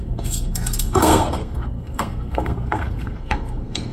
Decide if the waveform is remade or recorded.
remade